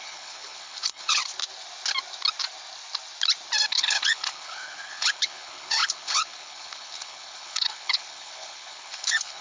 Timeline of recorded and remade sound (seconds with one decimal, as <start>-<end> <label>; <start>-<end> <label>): 0.0-1.2 remade; 1.2-3.7 recorded; 3.7-9.4 remade